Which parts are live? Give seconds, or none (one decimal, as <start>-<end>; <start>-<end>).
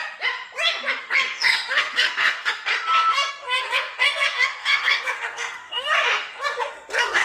0.0-1.0; 2.7-3.3